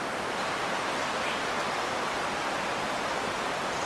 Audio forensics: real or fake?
real